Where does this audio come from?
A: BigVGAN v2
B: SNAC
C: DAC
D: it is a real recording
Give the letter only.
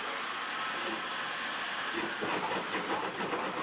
D